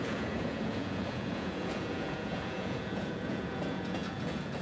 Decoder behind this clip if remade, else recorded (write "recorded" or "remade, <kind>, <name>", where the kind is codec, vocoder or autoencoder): remade, vocoder, Vocos